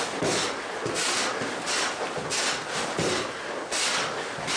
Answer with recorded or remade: recorded